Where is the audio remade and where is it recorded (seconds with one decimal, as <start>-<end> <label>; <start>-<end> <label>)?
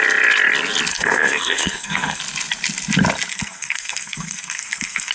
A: 0.0-0.9 recorded; 0.9-2.2 remade; 2.2-3.3 recorded; 3.3-5.1 remade